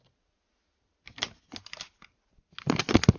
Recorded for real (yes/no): yes